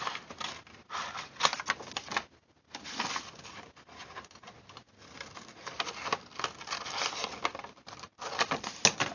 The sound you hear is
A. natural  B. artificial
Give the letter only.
A